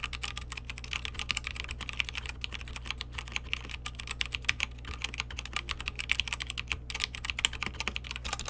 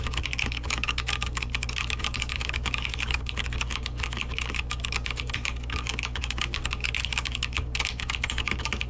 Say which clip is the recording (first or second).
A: first